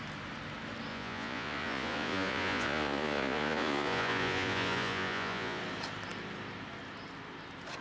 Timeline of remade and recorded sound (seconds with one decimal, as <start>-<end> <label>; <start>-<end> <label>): 0.0-0.9 recorded; 0.9-5.6 remade; 5.6-7.8 recorded